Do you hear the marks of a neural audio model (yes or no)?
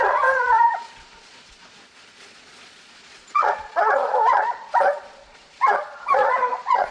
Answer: yes